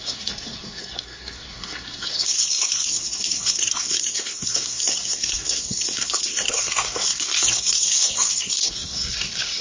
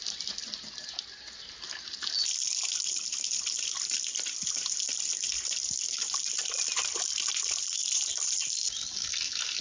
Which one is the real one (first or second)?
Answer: second